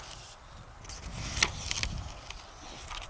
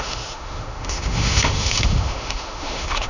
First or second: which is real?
first